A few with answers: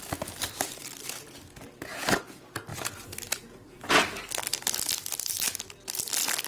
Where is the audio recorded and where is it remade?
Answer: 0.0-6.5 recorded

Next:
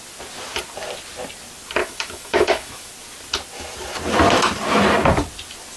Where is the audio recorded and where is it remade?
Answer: 0.0-1.8 recorded; 1.8-2.9 remade; 2.9-5.8 recorded

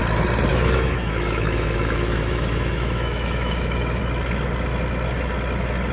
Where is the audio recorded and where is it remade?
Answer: 0.0-0.5 recorded; 0.5-4.0 remade; 4.0-5.9 recorded

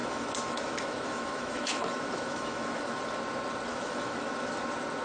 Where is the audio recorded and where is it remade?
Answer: 0.0-3.0 remade; 3.0-3.7 recorded; 3.7-4.5 remade; 4.5-5.0 recorded